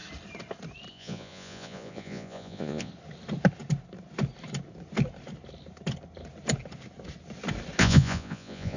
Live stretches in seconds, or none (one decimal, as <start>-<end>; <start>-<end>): 0.0-0.9; 2.9-7.8